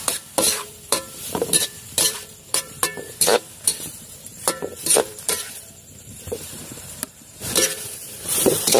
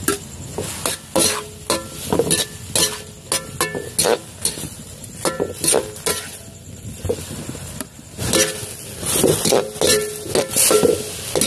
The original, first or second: second